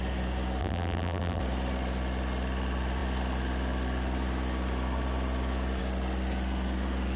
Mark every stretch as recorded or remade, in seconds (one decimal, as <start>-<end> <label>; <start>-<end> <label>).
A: 0.0-0.6 recorded; 0.6-1.4 remade; 1.4-7.2 recorded